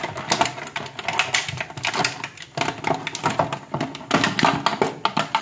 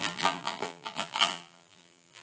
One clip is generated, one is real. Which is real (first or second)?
first